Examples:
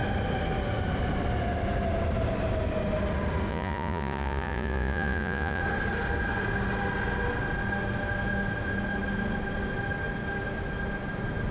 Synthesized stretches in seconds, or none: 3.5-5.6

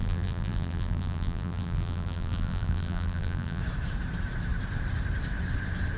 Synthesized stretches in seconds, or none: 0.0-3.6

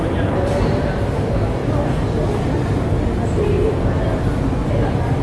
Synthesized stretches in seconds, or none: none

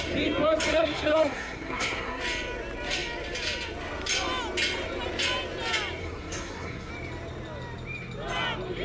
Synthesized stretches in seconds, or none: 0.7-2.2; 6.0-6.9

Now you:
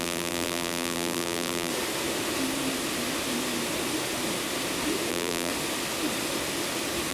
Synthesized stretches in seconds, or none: 0.0-1.7; 5.1-5.5